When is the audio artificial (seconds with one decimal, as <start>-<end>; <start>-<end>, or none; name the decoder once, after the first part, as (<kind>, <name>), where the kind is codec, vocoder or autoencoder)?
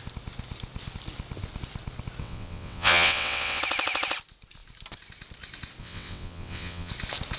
2.2-3.6 (vocoder, WaveNeXt); 5.8-6.9